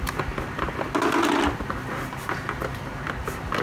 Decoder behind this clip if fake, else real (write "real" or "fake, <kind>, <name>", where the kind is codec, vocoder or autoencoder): real